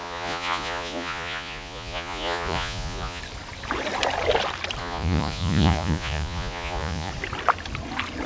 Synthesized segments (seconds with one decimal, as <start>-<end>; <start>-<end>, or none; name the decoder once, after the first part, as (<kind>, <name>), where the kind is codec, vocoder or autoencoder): 0.0-3.2 (vocoder, Vocos); 4.8-7.1